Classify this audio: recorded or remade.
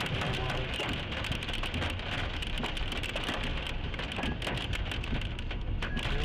recorded